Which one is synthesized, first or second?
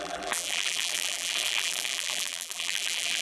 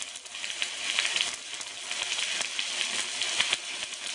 first